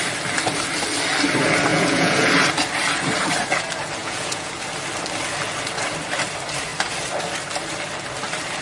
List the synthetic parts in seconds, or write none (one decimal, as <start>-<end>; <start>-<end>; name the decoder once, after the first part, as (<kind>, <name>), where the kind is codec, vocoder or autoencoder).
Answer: 1.7-2.3 (vocoder, Vocos); 4.0-4.5